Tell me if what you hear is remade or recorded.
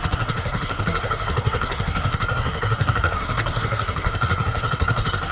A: remade